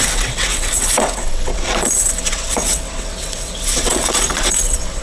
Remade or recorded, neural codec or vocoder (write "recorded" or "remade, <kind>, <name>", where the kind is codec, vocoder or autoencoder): remade, vocoder, WaveNeXt